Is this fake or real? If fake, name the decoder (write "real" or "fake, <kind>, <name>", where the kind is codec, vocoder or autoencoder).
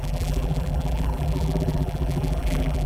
fake, vocoder, BigVGAN v2